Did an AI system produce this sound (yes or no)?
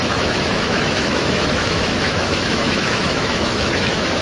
yes